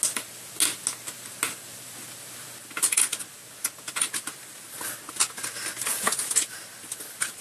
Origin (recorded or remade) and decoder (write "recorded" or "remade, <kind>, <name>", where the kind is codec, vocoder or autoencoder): recorded